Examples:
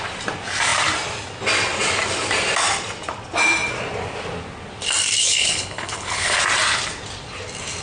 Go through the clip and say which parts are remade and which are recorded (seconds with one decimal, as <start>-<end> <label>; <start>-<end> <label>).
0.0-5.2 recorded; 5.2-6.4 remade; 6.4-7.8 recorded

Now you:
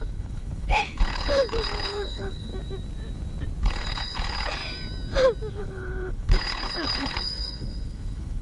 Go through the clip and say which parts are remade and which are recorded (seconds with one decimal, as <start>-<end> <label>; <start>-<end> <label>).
0.0-2.5 remade; 2.5-3.6 recorded; 3.6-4.6 remade; 4.6-5.5 recorded; 5.5-8.4 remade

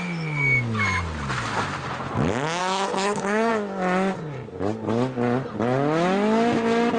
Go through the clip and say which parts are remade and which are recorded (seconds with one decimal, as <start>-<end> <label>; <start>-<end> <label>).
0.0-2.6 recorded; 2.6-3.5 remade; 3.5-7.0 recorded